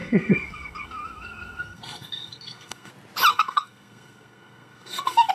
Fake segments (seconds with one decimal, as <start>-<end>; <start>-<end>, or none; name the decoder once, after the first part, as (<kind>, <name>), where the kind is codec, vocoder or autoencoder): 0.0-2.9 (codec, SNAC); 3.3-5.3